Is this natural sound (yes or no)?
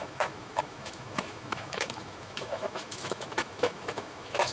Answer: no